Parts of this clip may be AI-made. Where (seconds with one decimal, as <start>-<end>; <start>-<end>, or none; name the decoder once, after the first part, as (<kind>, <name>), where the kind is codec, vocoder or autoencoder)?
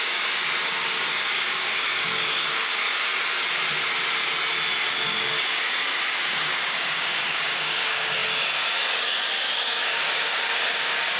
0.0-3.1 (codec, DAC); 4.9-11.2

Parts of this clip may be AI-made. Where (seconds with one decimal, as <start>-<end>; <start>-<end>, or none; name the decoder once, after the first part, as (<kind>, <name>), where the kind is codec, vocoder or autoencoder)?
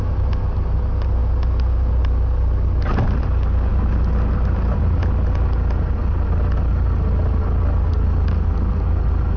none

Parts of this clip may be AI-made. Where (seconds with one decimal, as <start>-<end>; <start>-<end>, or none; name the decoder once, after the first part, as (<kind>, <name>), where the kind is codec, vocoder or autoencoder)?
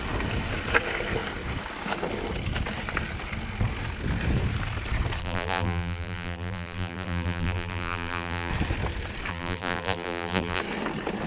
5.2-8.5 (vocoder, BigVGAN v2); 9.3-10.6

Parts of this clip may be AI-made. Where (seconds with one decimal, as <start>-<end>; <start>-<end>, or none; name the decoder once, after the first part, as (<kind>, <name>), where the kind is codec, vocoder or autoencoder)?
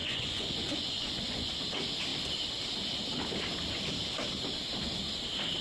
0.0-1.5 (vocoder, Vocos)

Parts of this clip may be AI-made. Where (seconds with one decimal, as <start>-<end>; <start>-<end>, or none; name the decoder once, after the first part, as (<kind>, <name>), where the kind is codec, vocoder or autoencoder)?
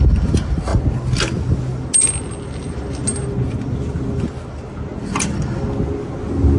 none